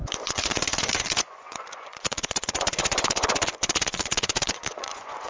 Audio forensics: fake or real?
fake